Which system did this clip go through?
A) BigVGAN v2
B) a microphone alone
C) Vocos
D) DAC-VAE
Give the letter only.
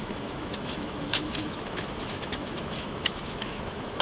D